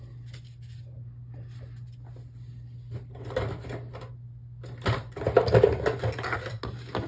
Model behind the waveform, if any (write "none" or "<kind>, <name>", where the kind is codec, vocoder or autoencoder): none